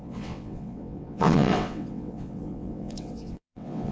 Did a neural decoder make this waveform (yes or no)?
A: yes